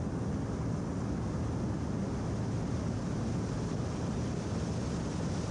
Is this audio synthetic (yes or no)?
no